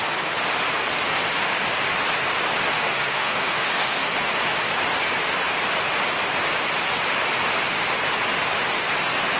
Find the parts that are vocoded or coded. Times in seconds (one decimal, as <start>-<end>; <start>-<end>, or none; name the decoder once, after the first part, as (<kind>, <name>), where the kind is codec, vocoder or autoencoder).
2.8-4.1 (codec, SNAC)